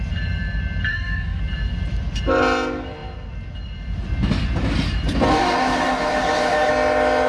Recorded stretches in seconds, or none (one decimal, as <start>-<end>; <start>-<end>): 0.0-0.9; 1.4-5.3; 6.7-7.3